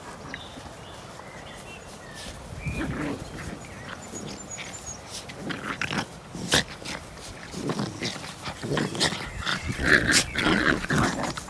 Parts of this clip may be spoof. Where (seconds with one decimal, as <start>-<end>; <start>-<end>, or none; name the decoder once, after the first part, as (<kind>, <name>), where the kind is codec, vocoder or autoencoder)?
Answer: 9.5-10.9 (vocoder, Vocos)